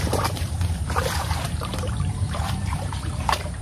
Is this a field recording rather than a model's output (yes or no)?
no